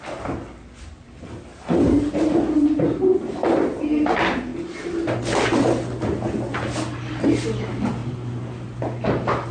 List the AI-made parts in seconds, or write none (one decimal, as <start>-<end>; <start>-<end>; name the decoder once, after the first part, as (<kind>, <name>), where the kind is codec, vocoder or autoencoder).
none